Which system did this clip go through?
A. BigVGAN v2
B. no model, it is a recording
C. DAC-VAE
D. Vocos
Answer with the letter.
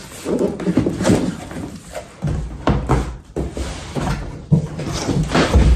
A